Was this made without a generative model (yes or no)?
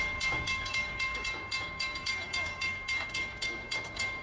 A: no